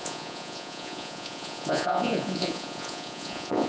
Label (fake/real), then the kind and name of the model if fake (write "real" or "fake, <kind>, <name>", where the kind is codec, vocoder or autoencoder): fake, vocoder, Vocos